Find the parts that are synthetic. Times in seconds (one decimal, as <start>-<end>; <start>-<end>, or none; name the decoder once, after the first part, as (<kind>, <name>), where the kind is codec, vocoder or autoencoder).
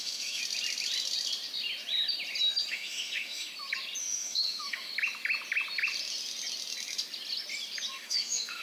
0.0-0.4 (autoencoder, DAC-VAE); 2.7-3.5; 4.0-4.9; 7.9-8.6